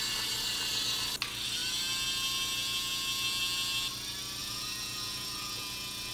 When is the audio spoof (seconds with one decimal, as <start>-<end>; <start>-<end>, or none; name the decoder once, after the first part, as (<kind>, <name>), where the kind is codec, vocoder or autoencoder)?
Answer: 4.4-6.1 (vocoder, Vocos)